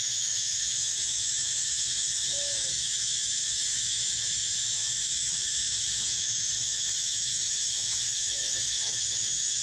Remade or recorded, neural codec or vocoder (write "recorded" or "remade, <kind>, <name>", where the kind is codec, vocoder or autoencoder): remade, autoencoder, DAC-VAE